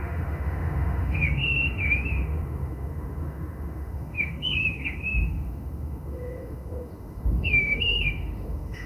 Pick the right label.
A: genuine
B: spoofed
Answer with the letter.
B